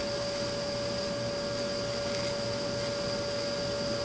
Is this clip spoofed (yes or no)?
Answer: no